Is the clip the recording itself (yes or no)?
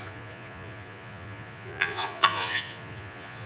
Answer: no